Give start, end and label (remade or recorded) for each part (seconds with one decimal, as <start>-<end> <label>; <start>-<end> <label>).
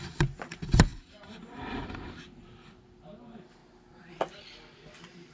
0.0-3.6 remade; 3.6-5.3 recorded